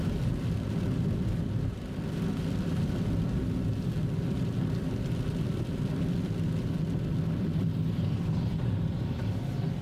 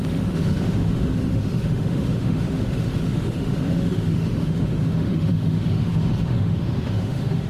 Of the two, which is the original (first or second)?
first